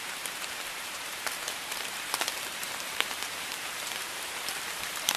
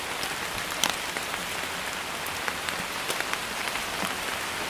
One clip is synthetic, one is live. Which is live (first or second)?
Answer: second